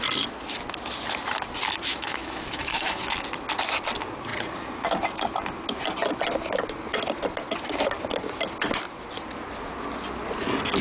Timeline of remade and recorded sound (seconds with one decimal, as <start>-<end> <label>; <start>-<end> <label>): 0.0-1.9 recorded; 1.9-3.0 remade; 3.0-10.8 recorded